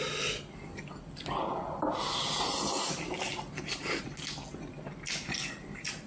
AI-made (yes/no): no